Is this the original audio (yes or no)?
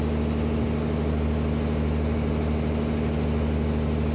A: yes